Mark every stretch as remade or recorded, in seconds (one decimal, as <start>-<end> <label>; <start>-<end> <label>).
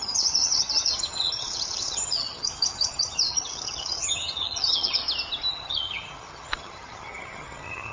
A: 0.0-5.0 remade; 5.0-5.5 recorded; 5.5-7.9 remade